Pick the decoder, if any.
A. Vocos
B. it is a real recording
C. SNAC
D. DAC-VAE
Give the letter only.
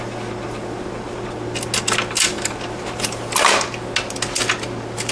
B